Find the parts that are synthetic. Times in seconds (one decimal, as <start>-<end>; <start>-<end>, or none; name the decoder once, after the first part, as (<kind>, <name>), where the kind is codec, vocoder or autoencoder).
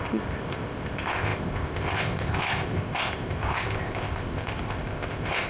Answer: 0.0-5.5 (codec, ZipCodec)